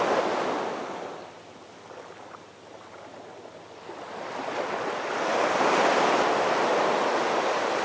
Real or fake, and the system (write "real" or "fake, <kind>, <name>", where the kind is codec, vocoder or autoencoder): real